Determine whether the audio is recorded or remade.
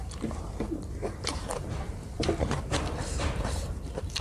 remade